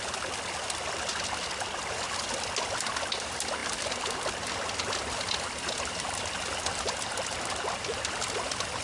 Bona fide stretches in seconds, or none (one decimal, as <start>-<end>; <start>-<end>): 0.0-8.8